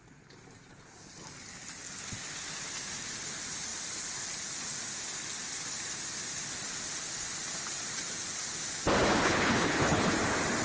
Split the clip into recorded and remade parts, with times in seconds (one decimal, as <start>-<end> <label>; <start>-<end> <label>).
0.0-9.1 recorded; 9.1-10.1 remade; 10.1-10.6 recorded